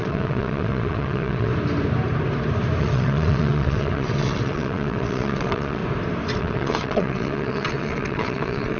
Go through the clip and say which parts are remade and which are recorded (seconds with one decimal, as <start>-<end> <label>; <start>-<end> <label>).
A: 0.0-1.5 remade; 1.5-2.8 recorded; 2.8-5.8 remade; 5.8-6.4 recorded; 6.4-8.8 remade